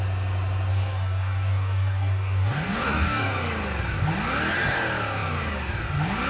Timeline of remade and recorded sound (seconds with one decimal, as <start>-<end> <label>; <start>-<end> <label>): 0.0-0.7 recorded; 0.7-3.3 remade; 3.3-6.3 recorded

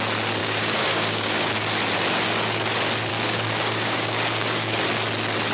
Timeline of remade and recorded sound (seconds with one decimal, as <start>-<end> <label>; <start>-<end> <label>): 0.0-0.4 recorded; 0.4-1.5 remade; 1.5-3.1 recorded; 3.1-4.8 remade; 4.8-5.5 recorded

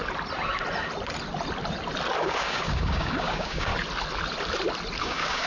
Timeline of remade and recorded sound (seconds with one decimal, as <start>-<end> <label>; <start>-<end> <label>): 0.0-2.2 recorded; 2.2-3.7 remade; 3.7-5.0 recorded; 5.0-5.5 remade

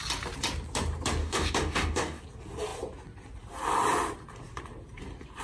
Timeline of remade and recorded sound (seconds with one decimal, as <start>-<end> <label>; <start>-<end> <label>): 0.0-1.2 recorded; 1.2-2.2 remade; 2.2-5.4 recorded

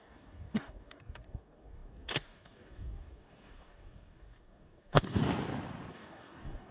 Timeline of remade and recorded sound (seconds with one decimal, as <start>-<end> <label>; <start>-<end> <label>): 0.0-5.2 remade; 5.2-5.9 recorded; 5.9-6.7 remade

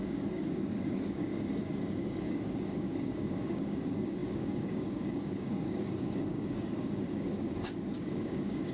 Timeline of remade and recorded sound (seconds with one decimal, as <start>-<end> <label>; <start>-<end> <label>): 0.0-8.7 remade

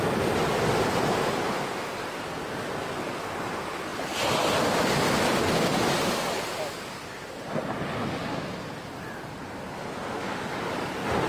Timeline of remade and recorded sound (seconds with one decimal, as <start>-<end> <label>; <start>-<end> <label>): 0.0-10.2 recorded; 10.2-10.9 remade; 10.9-11.3 recorded